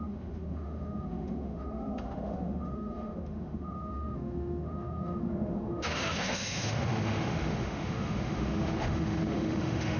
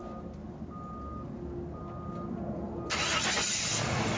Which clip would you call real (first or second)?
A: second